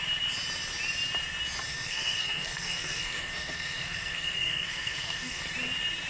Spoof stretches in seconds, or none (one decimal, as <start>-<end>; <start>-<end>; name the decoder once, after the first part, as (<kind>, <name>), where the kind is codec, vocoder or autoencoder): 1.7-5.4 (codec, SNAC)